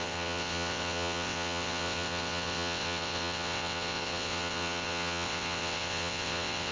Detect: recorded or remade remade